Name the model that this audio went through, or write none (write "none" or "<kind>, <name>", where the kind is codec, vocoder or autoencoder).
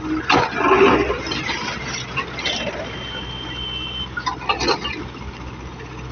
none